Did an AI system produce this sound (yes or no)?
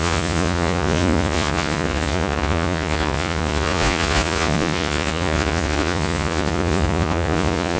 yes